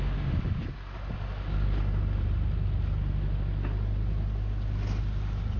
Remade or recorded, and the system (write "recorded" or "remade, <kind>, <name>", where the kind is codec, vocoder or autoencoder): recorded